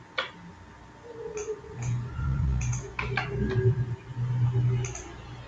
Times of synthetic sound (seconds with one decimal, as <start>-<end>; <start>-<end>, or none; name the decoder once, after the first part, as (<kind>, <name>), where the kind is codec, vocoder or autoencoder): 1.4-2.9 (vocoder, Vocos)